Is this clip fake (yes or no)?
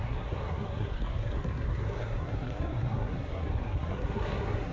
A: yes